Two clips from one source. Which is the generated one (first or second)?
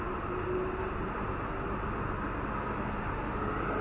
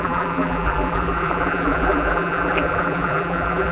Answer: second